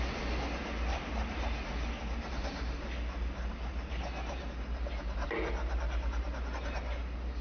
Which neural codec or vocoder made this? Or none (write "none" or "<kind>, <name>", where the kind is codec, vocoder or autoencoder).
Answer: none